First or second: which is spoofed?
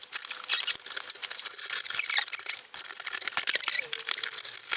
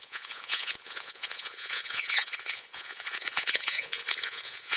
second